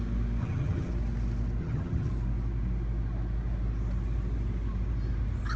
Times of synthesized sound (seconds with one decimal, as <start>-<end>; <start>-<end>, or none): 0.4-0.9; 1.6-2.1